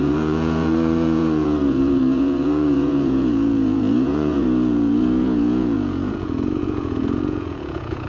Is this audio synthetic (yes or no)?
yes